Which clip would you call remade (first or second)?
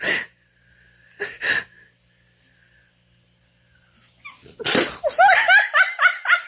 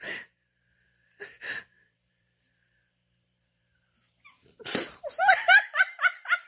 second